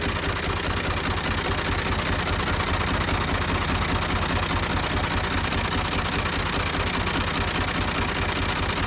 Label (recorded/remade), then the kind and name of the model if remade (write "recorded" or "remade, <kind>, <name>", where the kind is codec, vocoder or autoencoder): recorded